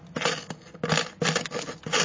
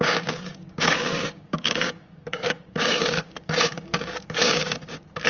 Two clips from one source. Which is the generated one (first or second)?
second